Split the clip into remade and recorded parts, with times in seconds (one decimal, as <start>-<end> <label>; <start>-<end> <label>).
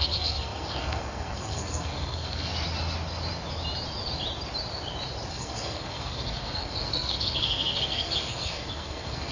0.0-2.5 remade; 2.5-5.3 recorded; 5.3-9.3 remade